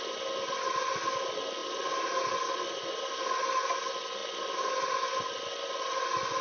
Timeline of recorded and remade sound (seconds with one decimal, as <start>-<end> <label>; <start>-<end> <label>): 0.0-6.4 recorded